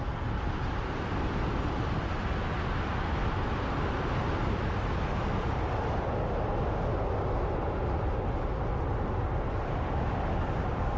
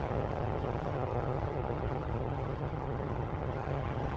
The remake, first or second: second